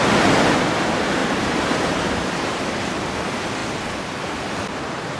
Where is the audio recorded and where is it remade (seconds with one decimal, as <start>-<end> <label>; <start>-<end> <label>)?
0.0-1.2 recorded; 1.2-3.2 remade; 3.2-5.2 recorded